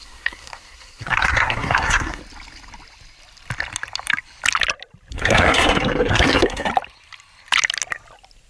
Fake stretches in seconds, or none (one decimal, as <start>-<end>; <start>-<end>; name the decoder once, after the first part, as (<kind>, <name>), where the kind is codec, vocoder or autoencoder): 0.0-2.2 (codec, SNAC); 5.1-6.7